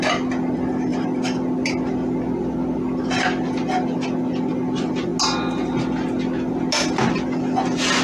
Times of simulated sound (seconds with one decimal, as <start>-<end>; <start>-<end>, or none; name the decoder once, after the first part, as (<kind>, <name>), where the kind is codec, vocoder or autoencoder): none